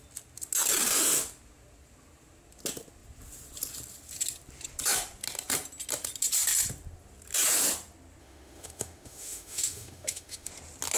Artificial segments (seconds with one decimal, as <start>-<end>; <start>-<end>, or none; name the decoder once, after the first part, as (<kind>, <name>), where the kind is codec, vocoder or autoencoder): 8.2-10.5 (autoencoder, DAC-VAE)